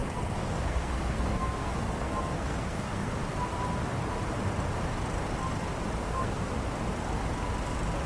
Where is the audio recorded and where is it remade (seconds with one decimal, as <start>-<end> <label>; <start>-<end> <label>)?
0.0-3.1 remade; 3.1-6.0 recorded; 6.0-6.5 remade; 6.5-8.1 recorded